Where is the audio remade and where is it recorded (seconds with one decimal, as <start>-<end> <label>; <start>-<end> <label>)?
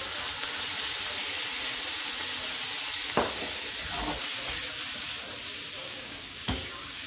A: 0.0-5.8 recorded; 5.8-7.1 remade